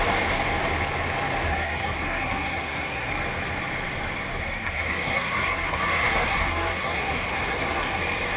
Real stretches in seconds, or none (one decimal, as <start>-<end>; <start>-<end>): 0.0-1.5; 3.1-4.4; 8.0-8.4